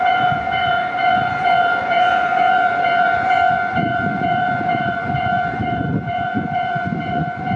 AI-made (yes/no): yes